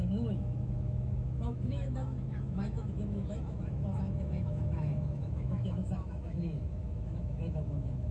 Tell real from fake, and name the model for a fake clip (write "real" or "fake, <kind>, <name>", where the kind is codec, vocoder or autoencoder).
fake, autoencoder, DAC-VAE